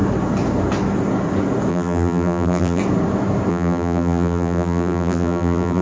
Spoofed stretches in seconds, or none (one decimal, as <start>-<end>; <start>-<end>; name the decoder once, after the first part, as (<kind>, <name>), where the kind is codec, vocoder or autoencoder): 1.7-2.8 (vocoder, BigVGAN v2); 3.5-5.8